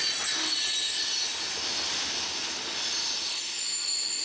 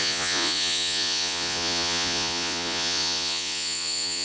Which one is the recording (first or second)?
first